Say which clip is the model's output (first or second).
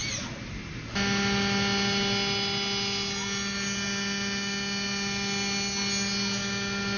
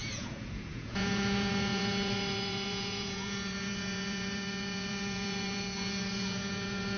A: second